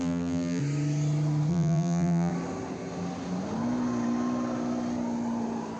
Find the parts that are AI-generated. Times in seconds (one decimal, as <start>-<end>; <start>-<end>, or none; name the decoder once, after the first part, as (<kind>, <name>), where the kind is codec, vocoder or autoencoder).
0.0-0.6 (vocoder, BigVGAN v2); 1.5-2.3